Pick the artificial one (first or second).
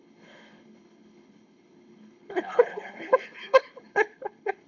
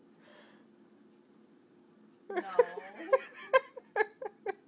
first